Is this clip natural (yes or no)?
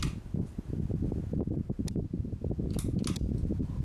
yes